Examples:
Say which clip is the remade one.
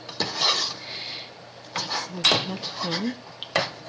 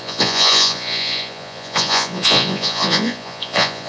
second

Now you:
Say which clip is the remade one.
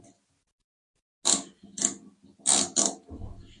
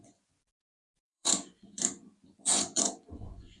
second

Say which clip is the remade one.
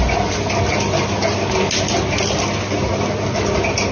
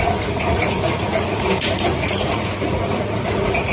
second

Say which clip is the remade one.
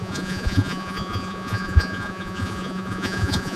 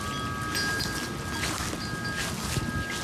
first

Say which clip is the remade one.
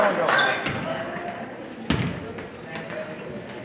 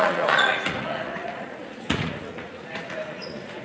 second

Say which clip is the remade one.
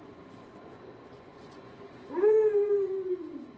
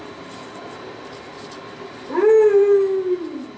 first